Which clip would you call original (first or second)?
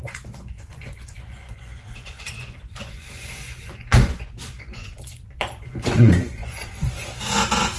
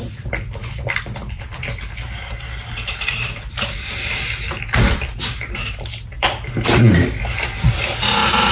second